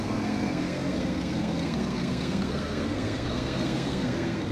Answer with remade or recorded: remade